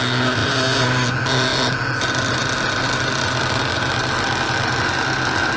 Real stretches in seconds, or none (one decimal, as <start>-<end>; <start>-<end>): 0.0-5.6